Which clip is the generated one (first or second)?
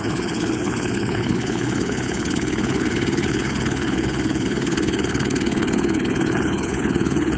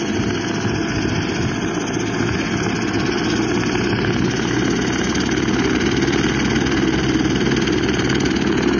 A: first